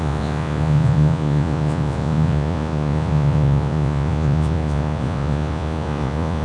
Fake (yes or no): yes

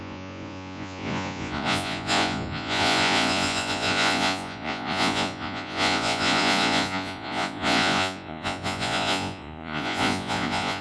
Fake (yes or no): yes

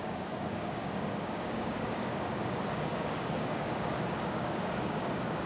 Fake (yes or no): yes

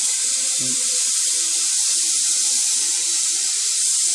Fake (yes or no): yes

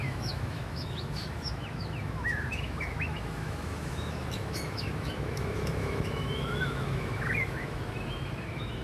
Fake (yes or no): yes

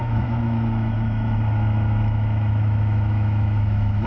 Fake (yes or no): yes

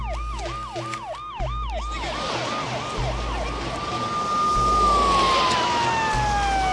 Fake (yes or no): no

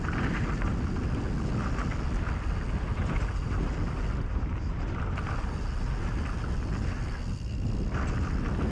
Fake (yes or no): no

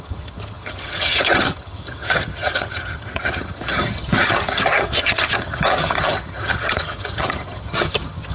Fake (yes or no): yes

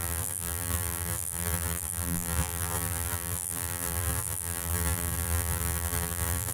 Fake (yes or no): yes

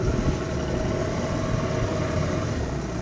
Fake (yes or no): no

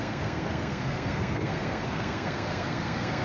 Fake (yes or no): yes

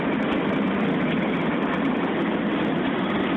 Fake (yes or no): no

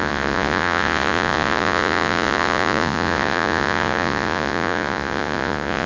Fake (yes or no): yes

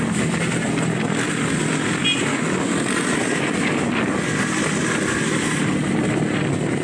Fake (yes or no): no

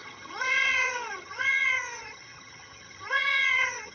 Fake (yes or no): yes